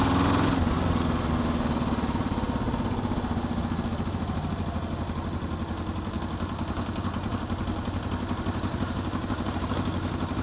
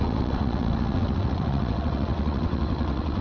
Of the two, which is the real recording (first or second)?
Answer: first